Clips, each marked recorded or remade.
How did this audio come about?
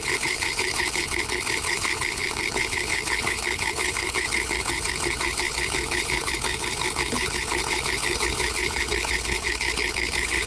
remade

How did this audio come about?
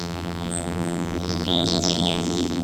remade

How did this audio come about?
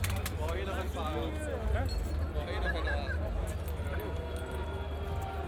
recorded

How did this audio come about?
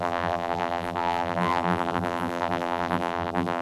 remade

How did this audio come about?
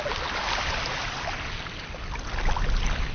recorded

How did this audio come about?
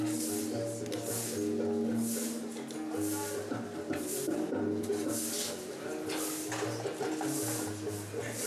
recorded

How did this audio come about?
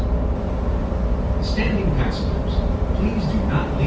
remade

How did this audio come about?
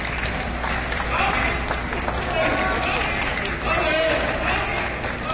recorded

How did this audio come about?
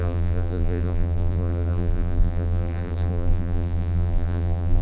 remade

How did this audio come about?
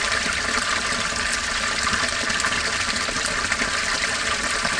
remade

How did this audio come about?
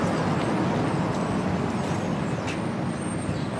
recorded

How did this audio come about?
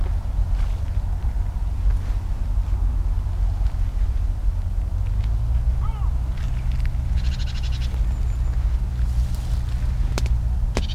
recorded